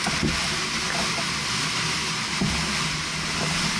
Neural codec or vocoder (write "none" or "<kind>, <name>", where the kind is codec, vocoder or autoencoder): none